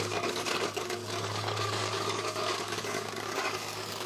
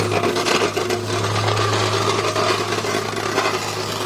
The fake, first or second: first